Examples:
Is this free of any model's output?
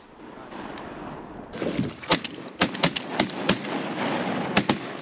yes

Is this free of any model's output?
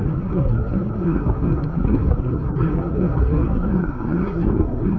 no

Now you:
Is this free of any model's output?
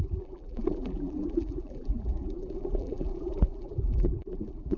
no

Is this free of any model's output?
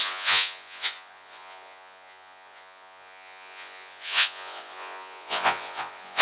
no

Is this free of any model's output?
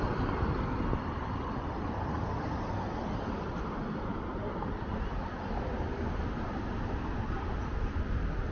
yes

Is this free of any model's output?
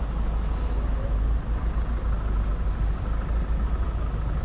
yes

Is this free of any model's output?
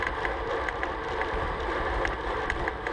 yes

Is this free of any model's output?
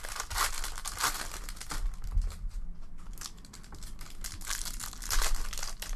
yes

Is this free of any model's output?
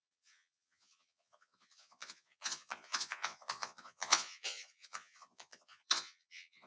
no